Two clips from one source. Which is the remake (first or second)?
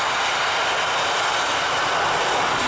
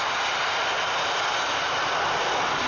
second